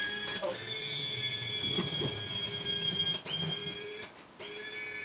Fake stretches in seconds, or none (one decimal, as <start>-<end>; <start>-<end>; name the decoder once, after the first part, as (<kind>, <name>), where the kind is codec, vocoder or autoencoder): none